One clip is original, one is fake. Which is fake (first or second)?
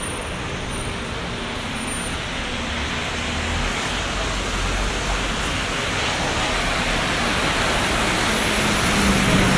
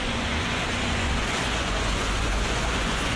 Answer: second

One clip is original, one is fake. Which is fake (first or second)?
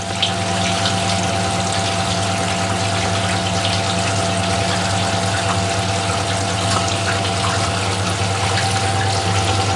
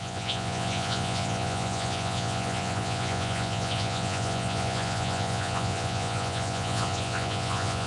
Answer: second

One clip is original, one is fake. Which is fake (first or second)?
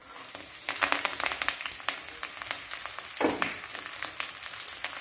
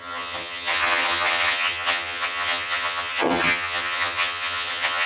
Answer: second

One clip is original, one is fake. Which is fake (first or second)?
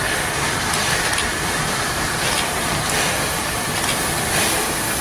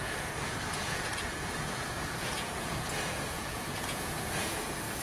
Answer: second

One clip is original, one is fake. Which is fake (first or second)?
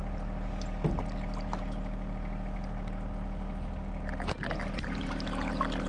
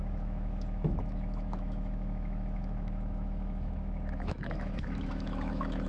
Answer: second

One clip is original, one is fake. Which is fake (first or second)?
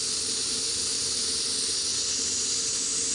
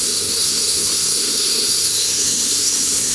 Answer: second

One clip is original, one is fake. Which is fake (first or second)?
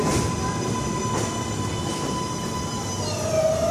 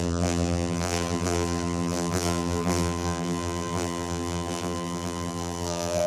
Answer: second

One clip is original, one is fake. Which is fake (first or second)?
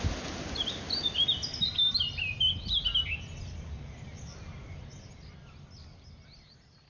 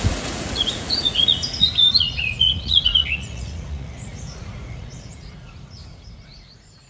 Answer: second